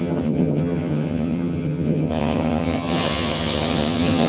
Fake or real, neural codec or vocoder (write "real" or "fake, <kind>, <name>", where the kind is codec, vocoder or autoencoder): fake, vocoder, HiFi-GAN